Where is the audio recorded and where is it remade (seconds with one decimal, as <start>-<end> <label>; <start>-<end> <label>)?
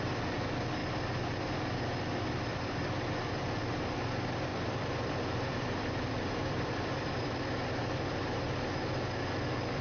0.0-2.5 recorded; 2.5-3.6 remade; 3.6-4.5 recorded; 4.5-8.0 remade; 8.0-9.8 recorded